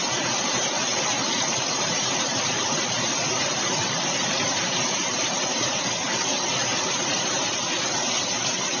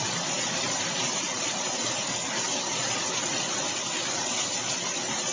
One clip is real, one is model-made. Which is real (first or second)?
second